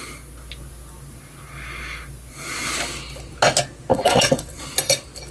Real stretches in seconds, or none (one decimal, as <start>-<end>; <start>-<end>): 0.0-3.9; 4.6-5.3